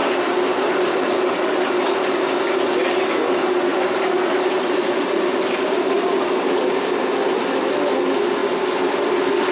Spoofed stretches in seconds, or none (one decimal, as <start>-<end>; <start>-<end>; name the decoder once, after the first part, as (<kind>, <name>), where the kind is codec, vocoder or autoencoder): 3.7-6.5 (vocoder, BigVGAN v2); 8.4-8.9